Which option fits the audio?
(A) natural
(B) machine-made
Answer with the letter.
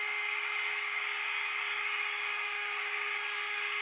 B